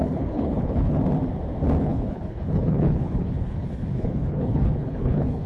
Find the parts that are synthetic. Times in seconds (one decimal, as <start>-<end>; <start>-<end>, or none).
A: 0.0-1.0; 1.8-5.5